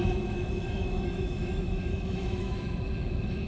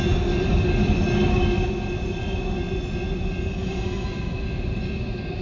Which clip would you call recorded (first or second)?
second